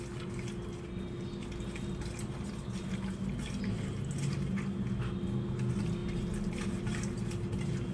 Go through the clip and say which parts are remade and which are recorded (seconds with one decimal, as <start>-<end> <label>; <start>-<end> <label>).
0.0-7.9 recorded